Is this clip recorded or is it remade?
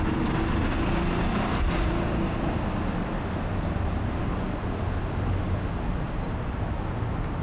recorded